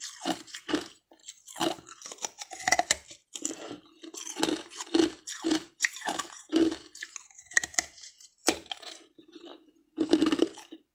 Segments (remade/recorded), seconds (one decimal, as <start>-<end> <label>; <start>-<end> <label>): 0.0-1.2 remade; 1.2-5.0 recorded; 5.0-9.5 remade; 9.5-10.4 recorded; 10.4-10.9 remade